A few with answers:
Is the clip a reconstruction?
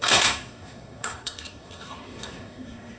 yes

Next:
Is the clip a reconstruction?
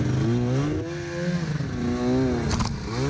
no